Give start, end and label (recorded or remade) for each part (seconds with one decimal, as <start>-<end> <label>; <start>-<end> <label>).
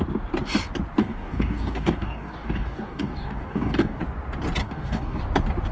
0.0-1.0 recorded; 1.0-4.0 remade; 4.0-4.6 recorded; 4.6-5.2 remade; 5.2-5.7 recorded